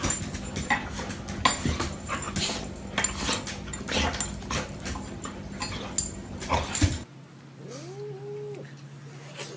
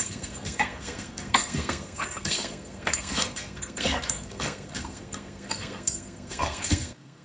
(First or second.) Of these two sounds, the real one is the first